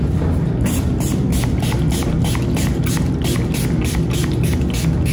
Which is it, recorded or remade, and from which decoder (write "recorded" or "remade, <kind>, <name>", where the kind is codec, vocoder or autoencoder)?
recorded